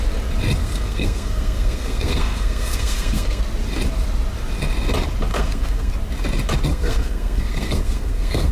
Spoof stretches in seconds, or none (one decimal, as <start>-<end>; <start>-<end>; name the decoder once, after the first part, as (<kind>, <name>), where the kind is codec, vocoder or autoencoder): 0.6-3.4 (codec, SNAC); 5.3-5.9; 6.7-8.5